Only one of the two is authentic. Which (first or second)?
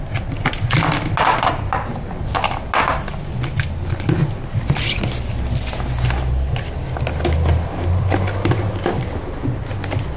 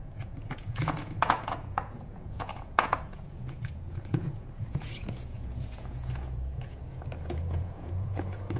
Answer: first